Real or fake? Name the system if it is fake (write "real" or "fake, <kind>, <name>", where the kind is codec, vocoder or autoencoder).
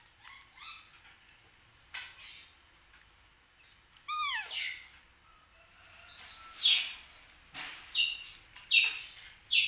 real